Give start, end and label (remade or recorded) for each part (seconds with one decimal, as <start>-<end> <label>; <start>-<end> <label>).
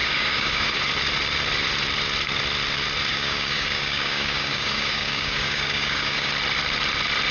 0.0-0.8 remade; 0.8-3.1 recorded; 3.1-6.3 remade; 6.3-7.3 recorded